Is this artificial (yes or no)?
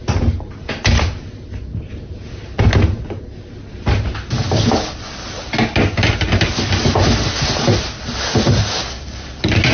no